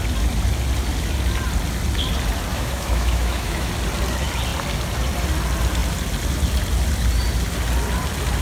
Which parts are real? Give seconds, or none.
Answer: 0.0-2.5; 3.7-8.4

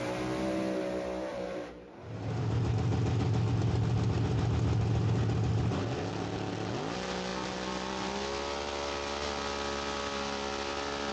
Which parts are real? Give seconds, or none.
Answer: 0.0-1.3; 2.7-11.1

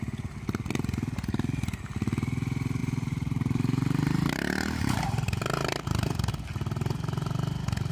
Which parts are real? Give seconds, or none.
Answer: 0.0-2.8; 6.3-7.9

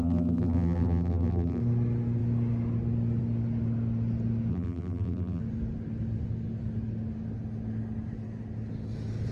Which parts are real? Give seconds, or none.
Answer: 1.6-4.5; 5.4-9.3